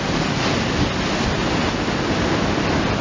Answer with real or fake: real